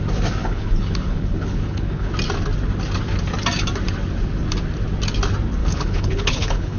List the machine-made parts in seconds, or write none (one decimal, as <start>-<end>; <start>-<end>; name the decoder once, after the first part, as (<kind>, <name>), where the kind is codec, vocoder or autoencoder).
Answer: 0.4-2.1 (codec, HILCodec); 5.6-6.8